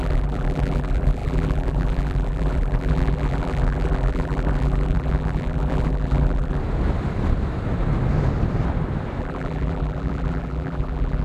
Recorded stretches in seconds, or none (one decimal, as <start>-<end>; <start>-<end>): 6.6-9.2